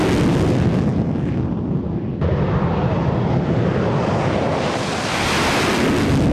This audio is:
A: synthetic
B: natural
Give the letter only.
B